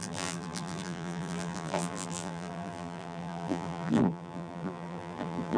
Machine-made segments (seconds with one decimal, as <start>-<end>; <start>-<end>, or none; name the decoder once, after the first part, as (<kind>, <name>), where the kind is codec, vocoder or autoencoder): 0.0-5.6 (vocoder, BigVGAN v2)